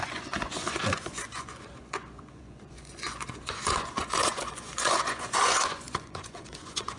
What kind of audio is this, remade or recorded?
remade